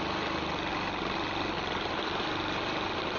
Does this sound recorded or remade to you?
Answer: recorded